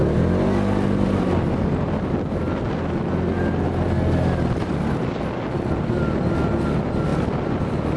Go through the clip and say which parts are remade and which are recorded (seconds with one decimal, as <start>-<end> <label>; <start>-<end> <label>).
0.0-7.1 recorded; 7.1-8.0 remade